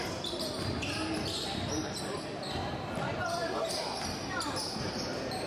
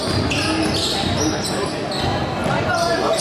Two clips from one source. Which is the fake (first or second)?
first